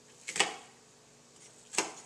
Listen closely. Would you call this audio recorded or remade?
recorded